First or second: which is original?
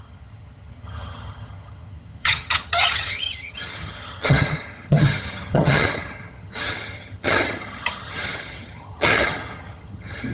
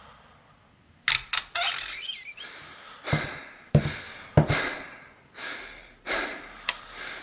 second